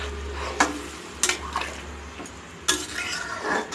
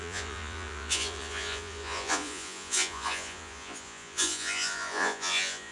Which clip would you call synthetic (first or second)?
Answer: second